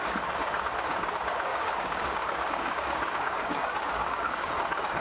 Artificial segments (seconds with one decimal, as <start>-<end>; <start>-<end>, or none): 1.5-4.5